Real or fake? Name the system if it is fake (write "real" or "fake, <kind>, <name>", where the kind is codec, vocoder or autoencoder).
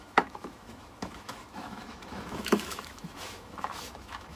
fake, autoencoder, DAC-VAE